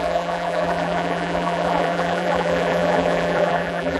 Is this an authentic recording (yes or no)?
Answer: no